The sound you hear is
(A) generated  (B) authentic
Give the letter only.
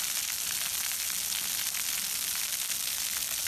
B